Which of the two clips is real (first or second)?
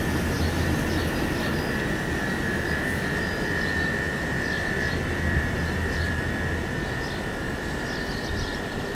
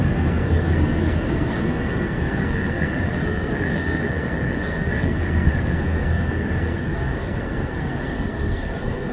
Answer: first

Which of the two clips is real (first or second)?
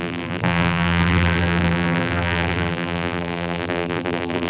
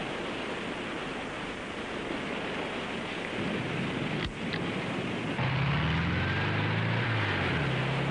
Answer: second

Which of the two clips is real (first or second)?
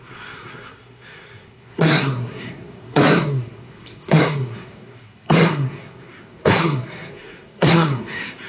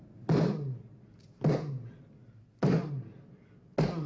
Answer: second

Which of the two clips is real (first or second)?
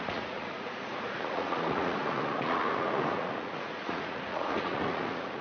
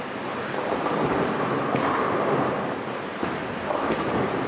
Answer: second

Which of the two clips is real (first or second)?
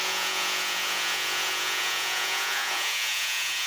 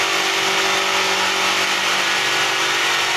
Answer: second